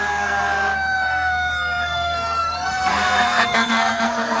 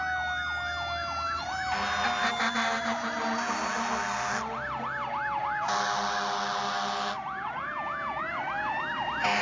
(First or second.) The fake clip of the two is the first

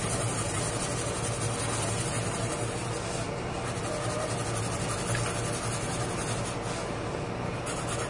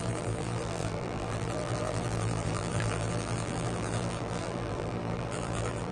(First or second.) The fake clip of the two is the second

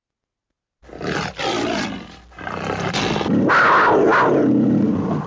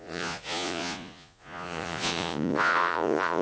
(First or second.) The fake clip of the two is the second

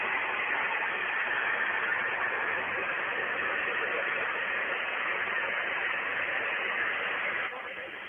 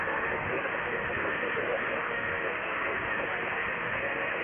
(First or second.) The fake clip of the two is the second